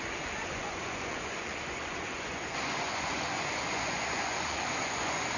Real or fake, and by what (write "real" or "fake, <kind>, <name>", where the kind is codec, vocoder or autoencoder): fake, vocoder, Vocos